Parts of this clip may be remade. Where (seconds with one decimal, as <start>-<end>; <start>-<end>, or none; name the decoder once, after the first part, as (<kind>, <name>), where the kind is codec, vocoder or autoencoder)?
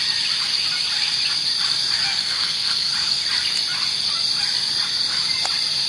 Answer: 2.2-2.9 (codec, SNAC)